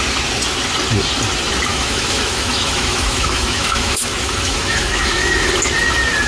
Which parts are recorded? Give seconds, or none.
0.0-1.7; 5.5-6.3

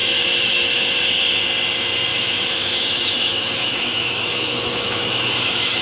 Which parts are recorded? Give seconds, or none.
1.0-2.1

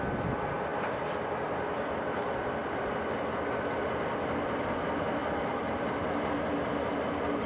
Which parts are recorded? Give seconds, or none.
0.0-7.5